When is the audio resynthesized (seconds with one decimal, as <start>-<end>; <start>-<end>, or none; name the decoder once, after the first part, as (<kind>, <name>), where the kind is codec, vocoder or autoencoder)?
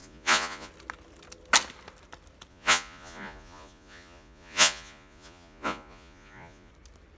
0.0-0.7 (vocoder, Vocos); 2.5-6.7